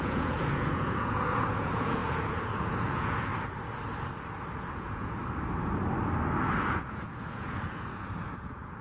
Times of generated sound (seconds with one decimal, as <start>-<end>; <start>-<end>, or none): 0.0-3.3; 4.7-5.2; 6.6-8.8